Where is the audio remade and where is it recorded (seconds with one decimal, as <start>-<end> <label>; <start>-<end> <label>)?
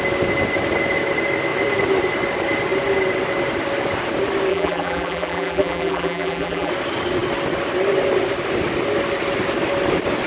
0.0-4.5 recorded; 4.5-6.7 remade; 6.7-10.3 recorded